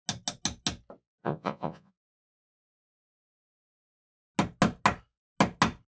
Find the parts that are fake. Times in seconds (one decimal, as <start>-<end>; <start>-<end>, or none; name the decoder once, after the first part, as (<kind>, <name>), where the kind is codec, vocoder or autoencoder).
1.2-1.9 (vocoder, Vocos)